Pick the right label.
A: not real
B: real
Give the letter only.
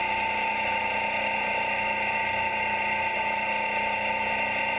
B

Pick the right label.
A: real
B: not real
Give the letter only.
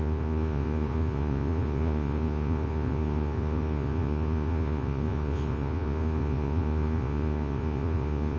B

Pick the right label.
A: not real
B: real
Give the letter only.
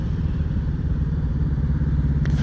A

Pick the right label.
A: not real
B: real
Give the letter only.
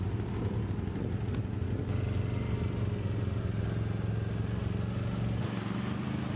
B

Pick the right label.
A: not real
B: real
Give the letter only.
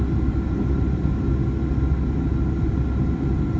B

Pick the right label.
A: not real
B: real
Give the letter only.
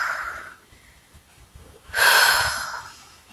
A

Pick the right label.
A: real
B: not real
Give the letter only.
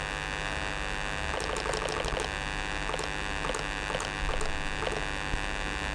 A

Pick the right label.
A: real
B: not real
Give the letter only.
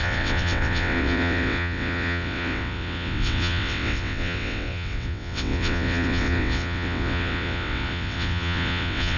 B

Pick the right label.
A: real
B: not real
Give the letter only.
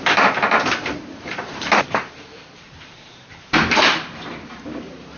B